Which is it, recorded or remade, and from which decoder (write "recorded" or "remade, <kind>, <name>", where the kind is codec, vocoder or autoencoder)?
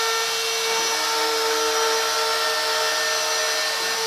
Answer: recorded